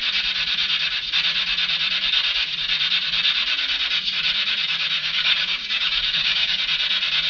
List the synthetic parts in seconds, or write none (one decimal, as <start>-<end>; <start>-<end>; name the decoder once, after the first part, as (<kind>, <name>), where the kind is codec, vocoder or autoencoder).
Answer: 5.0-6.6 (codec, DAC)